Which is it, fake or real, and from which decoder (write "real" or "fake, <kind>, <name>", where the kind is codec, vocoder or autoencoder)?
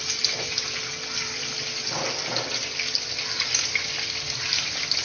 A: real